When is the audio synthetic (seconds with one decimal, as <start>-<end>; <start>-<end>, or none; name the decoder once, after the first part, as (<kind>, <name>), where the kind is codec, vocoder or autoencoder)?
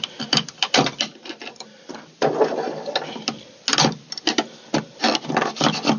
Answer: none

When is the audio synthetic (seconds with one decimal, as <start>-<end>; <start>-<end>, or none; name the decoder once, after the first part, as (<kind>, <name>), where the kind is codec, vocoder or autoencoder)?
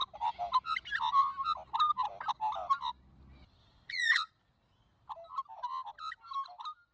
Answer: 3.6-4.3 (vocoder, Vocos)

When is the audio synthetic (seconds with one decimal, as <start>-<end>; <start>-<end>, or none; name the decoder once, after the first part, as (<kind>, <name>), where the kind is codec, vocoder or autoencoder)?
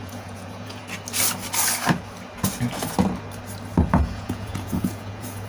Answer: 0.0-0.8 (vocoder, Vocos); 4.0-5.5